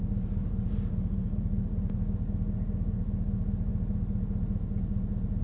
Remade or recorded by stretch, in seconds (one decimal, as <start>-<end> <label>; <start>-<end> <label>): 0.0-0.4 recorded; 0.4-1.9 remade; 1.9-5.4 recorded